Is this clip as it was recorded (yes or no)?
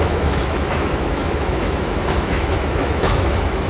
no